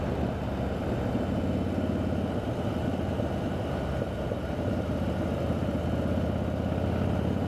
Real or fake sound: real